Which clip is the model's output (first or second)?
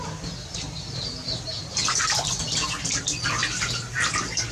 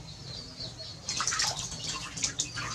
first